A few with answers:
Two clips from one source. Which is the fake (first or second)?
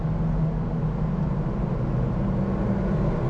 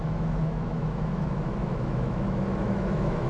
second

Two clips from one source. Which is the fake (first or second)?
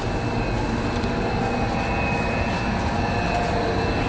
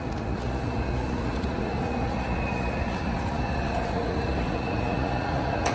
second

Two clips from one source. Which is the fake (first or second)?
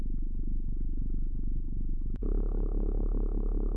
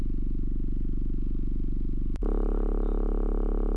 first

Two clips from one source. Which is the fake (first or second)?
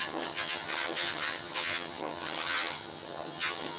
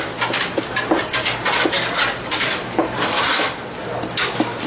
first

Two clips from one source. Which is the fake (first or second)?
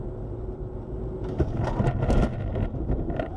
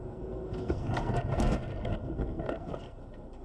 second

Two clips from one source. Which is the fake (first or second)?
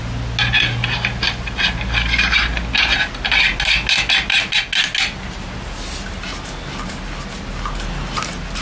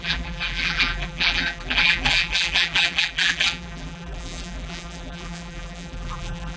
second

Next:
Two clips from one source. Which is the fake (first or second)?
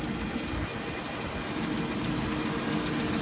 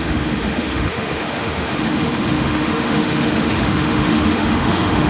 second